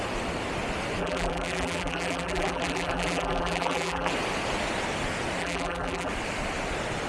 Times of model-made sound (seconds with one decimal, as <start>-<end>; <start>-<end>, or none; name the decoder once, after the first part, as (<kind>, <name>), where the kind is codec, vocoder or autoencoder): 1.0-4.1 (vocoder, BigVGAN v2); 5.4-6.1